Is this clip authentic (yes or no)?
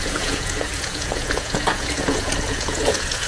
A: no